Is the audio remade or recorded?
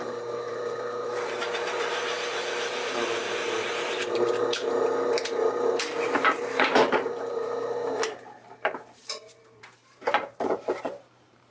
remade